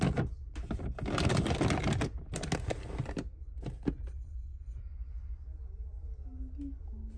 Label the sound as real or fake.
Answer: real